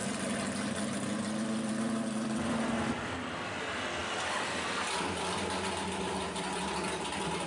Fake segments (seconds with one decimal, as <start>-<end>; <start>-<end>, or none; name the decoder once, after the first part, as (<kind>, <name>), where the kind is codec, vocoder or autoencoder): 4.0-7.5 (vocoder, BigVGAN v2)